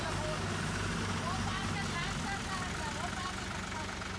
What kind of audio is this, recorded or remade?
recorded